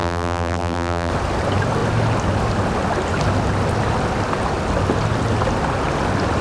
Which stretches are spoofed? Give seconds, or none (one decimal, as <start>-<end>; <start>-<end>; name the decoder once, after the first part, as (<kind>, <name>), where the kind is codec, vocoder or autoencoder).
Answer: 0.0-1.1 (vocoder, BigVGAN v2)